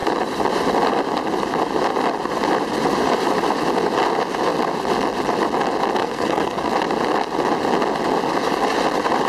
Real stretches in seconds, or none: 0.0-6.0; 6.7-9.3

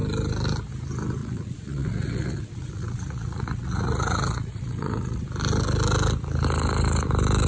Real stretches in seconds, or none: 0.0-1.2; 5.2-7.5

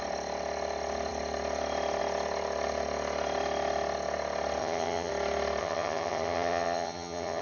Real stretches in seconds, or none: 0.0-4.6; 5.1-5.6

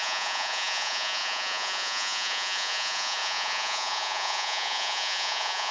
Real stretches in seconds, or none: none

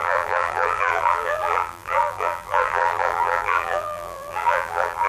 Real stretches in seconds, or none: none